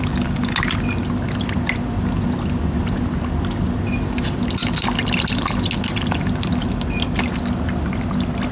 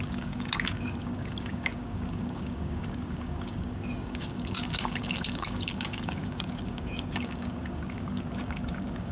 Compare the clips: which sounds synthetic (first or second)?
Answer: second